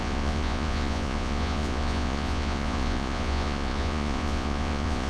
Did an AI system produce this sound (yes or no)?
yes